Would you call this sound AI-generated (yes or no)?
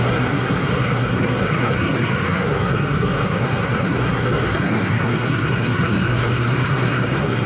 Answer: yes